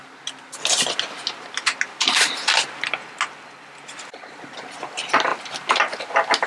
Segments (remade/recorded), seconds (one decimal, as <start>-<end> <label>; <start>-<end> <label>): 0.0-6.5 recorded

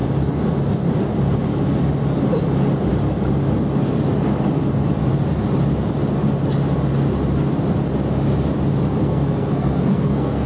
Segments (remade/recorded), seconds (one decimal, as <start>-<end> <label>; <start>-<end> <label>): 0.0-8.9 recorded; 8.9-10.5 remade

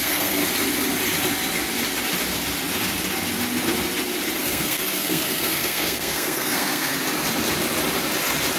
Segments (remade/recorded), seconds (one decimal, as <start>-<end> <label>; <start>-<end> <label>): 0.0-0.4 remade; 0.4-4.4 recorded; 4.4-6.9 remade; 6.9-8.6 recorded

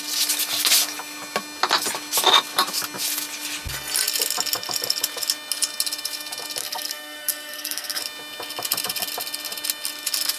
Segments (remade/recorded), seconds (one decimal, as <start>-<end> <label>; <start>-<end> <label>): 0.0-6.6 recorded; 6.6-8.0 remade; 8.0-10.4 recorded

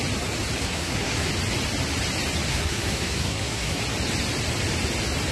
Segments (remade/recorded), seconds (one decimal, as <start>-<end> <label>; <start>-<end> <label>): 0.0-0.6 recorded; 0.6-1.3 remade; 1.3-2.5 recorded; 2.5-3.8 remade; 3.8-5.3 recorded

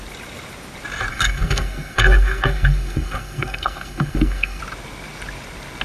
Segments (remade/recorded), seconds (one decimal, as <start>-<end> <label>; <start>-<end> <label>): 0.0-1.1 recorded; 1.1-4.6 remade; 4.6-5.8 recorded